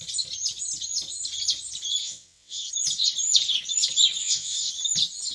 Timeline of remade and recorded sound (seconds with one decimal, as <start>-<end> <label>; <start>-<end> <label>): 0.0-2.0 recorded; 2.0-2.7 remade; 2.7-4.2 recorded; 4.2-4.7 remade; 4.7-5.3 recorded